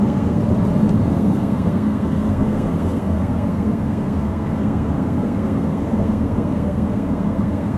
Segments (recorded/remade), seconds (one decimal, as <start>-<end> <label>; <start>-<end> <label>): 0.0-0.4 remade; 0.4-1.1 recorded; 1.1-7.8 remade